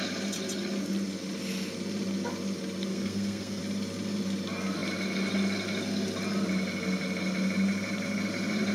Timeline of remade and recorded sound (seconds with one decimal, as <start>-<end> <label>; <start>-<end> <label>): 0.0-2.9 recorded; 2.9-3.6 remade; 3.6-8.7 recorded